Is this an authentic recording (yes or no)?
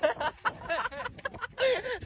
yes